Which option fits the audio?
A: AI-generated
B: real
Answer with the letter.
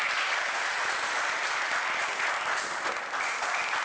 B